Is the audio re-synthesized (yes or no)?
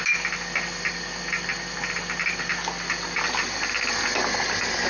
no